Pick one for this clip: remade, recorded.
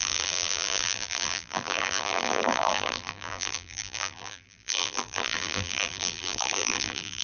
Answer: remade